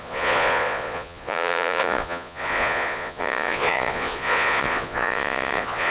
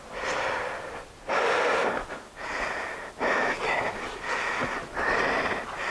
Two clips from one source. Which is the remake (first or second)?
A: first